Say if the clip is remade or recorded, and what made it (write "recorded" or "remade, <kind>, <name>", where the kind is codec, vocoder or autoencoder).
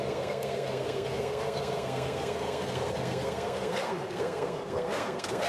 remade, codec, SNAC